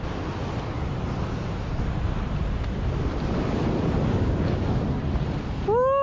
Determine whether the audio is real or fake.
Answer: real